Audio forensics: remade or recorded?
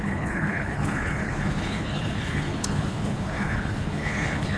remade